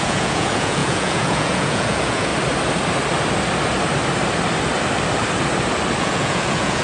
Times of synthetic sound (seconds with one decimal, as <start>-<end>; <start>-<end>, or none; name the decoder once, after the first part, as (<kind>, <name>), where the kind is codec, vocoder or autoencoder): 0.0-2.3 (vocoder, Vocos); 6.0-6.8